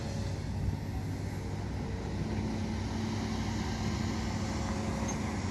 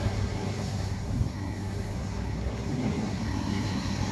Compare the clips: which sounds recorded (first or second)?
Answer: first